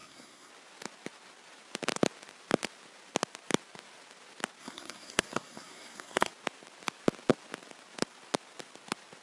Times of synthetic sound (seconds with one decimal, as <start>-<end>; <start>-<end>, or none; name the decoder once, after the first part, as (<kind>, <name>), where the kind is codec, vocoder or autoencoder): 0.0-0.5 (codec, SNAC); 4.6-6.3